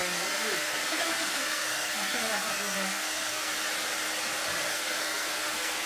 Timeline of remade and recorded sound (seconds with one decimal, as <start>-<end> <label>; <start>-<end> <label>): 0.0-3.5 remade; 3.5-4.7 recorded; 4.7-5.9 remade